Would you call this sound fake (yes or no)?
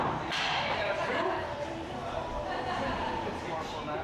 yes